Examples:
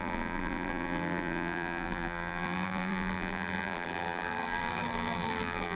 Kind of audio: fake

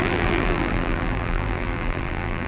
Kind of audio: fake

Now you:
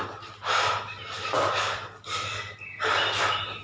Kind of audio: real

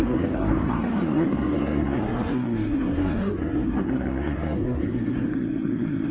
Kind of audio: fake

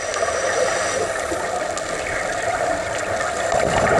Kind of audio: real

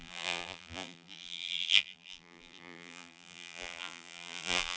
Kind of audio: fake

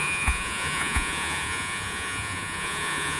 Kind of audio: fake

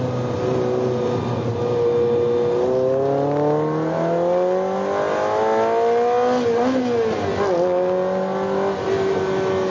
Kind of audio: real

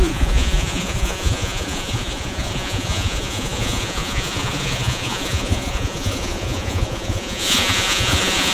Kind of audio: fake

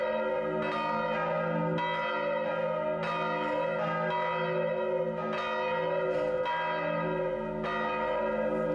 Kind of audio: real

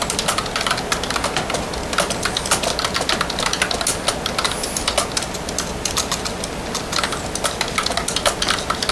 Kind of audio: real